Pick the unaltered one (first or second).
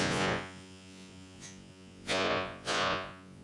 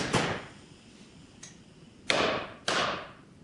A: second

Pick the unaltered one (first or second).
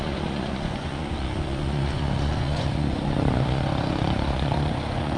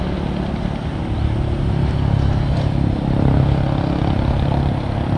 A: second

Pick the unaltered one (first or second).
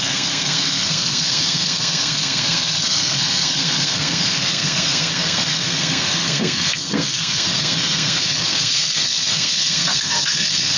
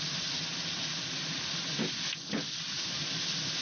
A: second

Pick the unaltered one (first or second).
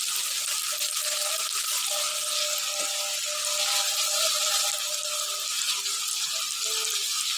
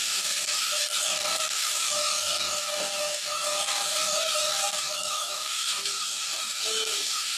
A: first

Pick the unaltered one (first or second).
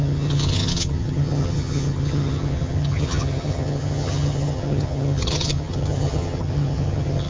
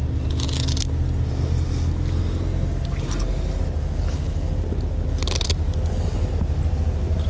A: second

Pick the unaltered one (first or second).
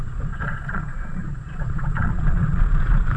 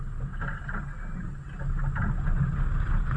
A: second